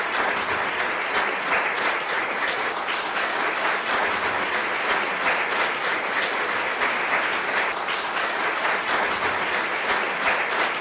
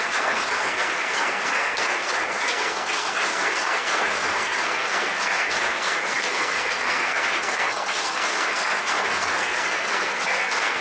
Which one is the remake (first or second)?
second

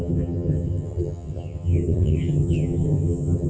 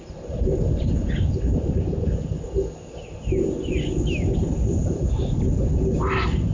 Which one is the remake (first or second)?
first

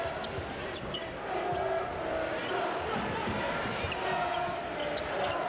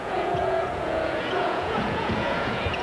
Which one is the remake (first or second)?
second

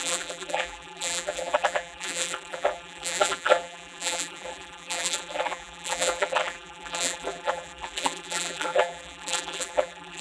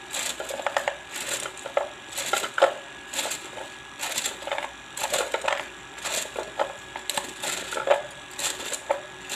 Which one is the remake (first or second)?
first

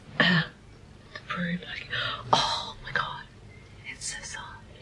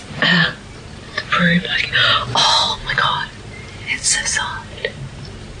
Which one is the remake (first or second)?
second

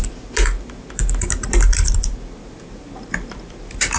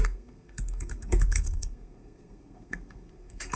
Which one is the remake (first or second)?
second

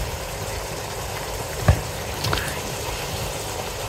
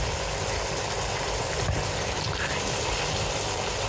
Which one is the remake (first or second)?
first